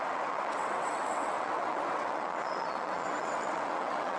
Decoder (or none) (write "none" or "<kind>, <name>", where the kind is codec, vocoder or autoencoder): vocoder, WaveNeXt